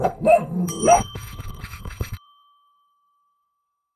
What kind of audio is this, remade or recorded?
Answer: remade